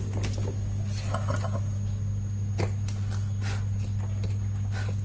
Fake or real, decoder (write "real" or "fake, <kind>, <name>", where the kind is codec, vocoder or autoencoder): real